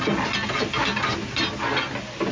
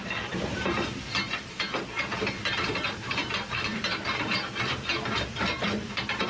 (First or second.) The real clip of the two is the first